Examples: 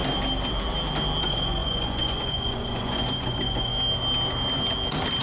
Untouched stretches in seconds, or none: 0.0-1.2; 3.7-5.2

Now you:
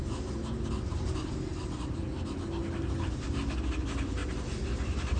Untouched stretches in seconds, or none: 0.0-5.2

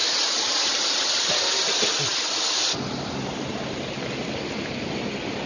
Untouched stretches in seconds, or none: 0.0-5.5

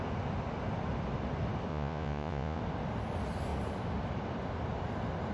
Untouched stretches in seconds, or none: 0.0-1.7; 2.6-5.3

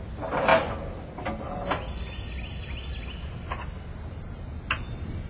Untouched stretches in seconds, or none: 0.0-5.3

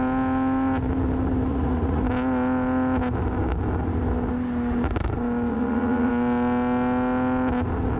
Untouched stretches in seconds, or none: 0.0-1.5; 2.0-5.5; 6.1-8.0

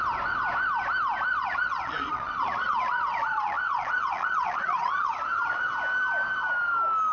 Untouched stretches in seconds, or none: 0.0-1.3; 5.6-7.1